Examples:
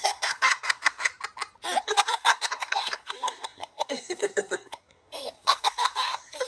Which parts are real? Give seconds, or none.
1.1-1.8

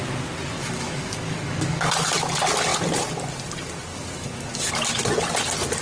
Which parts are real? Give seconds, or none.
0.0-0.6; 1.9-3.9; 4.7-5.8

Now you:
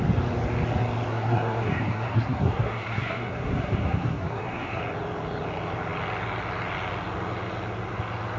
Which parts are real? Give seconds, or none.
0.0-1.1; 4.8-8.4